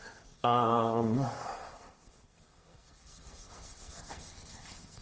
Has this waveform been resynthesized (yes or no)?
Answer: yes